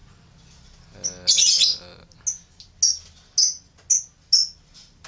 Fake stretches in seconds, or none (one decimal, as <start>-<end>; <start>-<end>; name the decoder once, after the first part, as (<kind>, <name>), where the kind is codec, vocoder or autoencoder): none